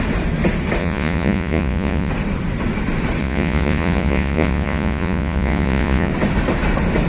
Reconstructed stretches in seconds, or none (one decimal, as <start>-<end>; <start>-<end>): 0.8-2.1; 3.2-6.1